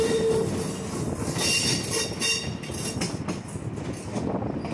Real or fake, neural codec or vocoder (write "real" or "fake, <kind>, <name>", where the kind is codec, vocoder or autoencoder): real